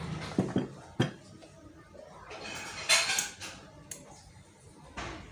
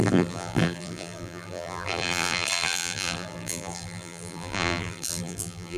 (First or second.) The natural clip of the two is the first